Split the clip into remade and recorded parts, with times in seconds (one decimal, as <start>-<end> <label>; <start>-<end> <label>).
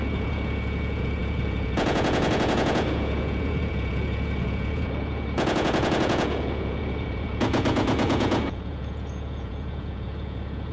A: 0.0-10.7 remade